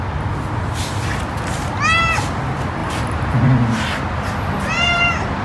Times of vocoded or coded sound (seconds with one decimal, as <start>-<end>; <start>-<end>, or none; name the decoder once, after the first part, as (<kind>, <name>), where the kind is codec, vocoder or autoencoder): 2.8-3.5 (vocoder, BigVGAN v2)